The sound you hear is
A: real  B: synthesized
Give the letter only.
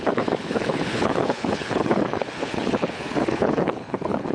B